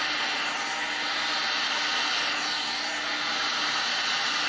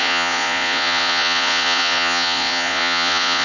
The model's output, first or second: second